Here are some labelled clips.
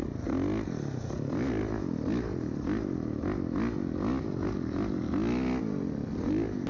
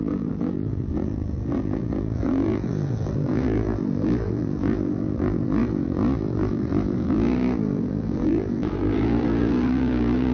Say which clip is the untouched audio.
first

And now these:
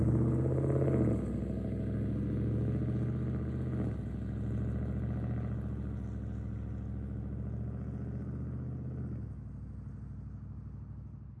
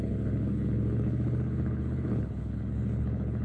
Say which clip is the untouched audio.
first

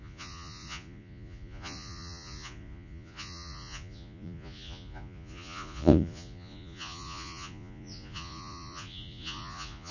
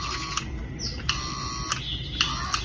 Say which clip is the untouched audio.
second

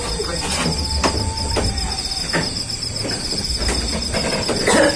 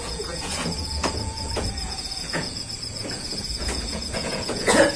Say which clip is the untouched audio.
first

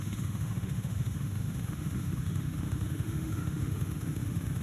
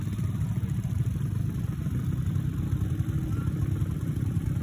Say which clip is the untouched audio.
second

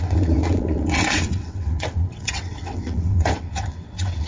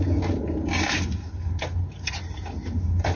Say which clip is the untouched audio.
second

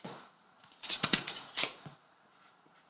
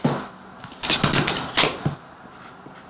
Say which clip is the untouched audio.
second